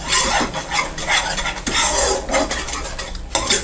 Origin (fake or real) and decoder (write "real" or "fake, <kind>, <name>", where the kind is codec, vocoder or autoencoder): real